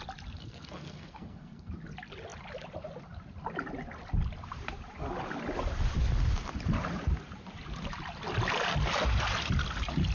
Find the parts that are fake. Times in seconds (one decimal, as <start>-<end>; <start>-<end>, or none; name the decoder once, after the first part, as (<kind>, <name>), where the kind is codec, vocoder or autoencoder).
0.4-1.7 (codec, SNAC)